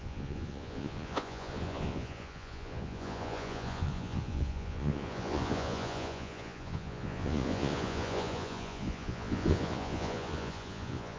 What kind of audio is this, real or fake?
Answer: fake